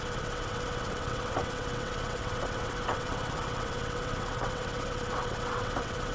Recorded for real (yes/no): no